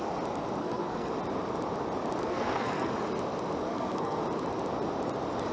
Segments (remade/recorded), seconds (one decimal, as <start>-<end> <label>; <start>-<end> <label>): 0.0-0.6 recorded; 0.6-1.1 remade; 1.1-2.2 recorded; 2.2-2.9 remade; 2.9-3.6 recorded; 3.6-4.2 remade; 4.2-5.5 recorded